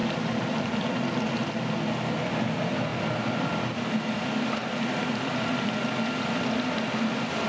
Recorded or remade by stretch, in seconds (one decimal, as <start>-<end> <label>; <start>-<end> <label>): 0.0-1.5 remade; 1.5-2.9 recorded; 2.9-6.4 remade; 6.4-7.5 recorded